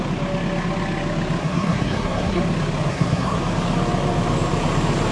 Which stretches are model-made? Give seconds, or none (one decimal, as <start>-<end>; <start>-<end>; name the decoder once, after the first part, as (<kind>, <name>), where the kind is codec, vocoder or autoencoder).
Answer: 1.4-2.4 (codec, SNAC); 2.9-3.4